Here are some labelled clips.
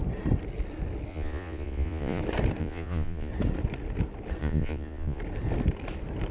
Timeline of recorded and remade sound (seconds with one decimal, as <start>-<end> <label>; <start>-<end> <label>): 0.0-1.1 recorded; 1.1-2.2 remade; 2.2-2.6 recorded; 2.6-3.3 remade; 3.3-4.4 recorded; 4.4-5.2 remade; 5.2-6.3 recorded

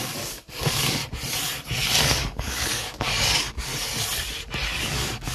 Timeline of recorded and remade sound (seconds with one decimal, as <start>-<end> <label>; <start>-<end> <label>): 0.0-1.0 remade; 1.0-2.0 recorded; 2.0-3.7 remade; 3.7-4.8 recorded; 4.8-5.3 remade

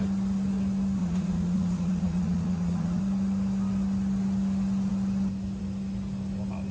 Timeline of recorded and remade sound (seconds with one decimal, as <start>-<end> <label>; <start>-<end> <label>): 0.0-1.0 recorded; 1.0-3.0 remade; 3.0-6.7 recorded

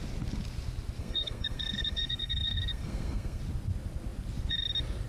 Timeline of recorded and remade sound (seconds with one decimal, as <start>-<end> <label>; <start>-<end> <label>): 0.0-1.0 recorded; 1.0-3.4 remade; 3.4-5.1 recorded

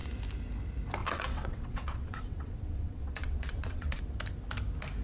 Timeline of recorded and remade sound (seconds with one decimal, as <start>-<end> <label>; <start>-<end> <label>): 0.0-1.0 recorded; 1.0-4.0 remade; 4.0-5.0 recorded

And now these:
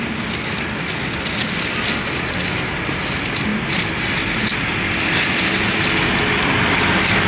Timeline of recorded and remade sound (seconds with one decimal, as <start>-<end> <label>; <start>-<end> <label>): 0.0-7.3 recorded

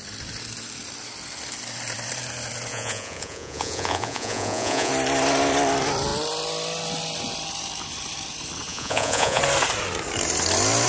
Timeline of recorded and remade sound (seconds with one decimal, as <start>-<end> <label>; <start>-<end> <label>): 0.0-2.7 recorded; 2.7-4.9 remade; 4.9-8.7 recorded; 8.7-9.4 remade; 9.4-10.9 recorded

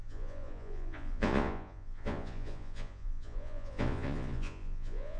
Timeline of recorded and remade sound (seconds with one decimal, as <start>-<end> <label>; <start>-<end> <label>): 0.0-5.2 remade